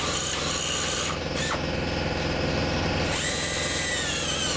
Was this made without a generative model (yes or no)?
yes